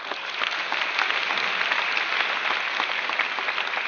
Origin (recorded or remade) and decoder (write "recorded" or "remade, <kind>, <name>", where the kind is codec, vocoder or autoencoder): recorded